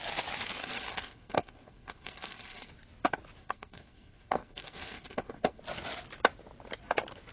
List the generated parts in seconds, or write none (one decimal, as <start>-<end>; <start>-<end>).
0.6-2.7; 3.4-5.6